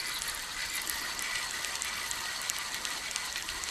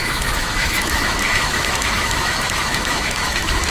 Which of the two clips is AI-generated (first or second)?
second